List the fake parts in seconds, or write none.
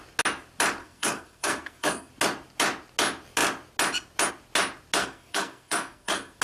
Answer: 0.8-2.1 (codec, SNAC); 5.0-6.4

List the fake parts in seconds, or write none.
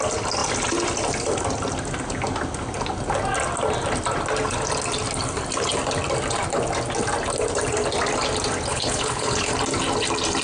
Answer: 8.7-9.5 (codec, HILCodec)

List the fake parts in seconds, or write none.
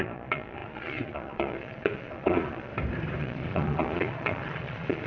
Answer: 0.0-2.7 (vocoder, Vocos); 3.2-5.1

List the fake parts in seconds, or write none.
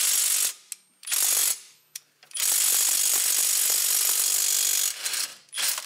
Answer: 1.4-4.4 (vocoder, BigVGAN v2); 5.3-5.9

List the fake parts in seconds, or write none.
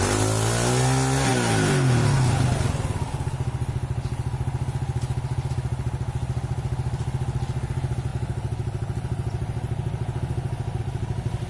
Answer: none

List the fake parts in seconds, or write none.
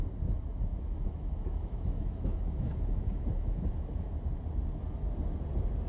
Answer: 0.7-4.1 (autoencoder, DAC-VAE)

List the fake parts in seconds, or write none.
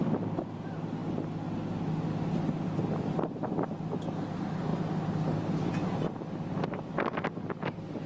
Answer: none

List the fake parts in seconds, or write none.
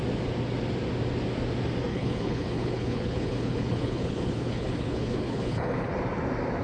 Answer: 1.9-5.9 (codec, HILCodec)